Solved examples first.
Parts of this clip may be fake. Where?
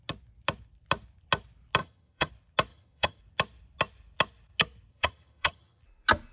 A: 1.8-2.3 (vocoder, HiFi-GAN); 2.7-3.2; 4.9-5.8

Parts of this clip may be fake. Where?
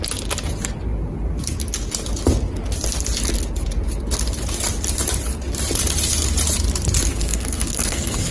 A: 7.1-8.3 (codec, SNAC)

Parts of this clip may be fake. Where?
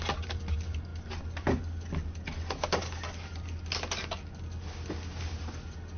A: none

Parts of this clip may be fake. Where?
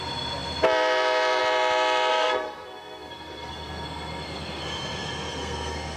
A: 2.1-6.0 (codec, SNAC)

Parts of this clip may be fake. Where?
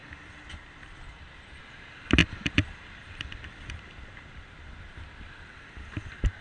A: 0.0-1.6 (vocoder, BigVGAN v2); 2.2-5.5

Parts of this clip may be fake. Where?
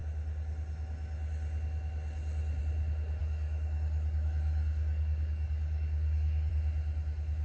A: 3.2-6.5 (codec, DAC)